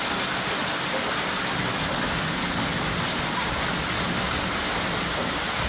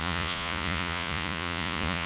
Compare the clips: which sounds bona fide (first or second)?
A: first